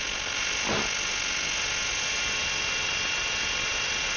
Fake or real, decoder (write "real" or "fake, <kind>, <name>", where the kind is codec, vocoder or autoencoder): real